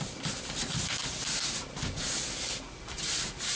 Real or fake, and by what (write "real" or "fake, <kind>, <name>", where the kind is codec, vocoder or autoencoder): real